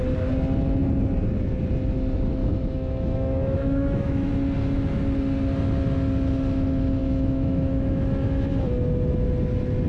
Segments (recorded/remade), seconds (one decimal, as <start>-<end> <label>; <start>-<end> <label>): 0.0-2.4 recorded; 2.4-4.3 remade; 4.3-7.0 recorded; 7.0-8.5 remade; 8.5-9.9 recorded